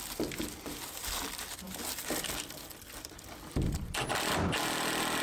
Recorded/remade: recorded